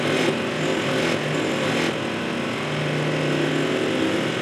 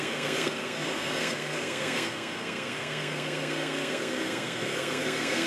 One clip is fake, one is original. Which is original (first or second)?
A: first